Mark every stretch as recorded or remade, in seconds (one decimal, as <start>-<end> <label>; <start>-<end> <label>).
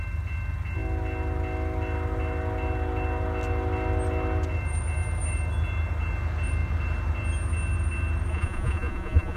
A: 0.0-8.3 recorded; 8.3-9.4 remade